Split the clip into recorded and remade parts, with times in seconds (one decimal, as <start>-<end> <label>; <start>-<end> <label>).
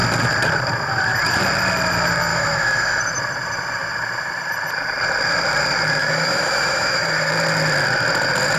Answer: 0.0-2.3 recorded; 2.3-3.0 remade; 3.0-6.0 recorded; 6.0-7.3 remade; 7.3-8.6 recorded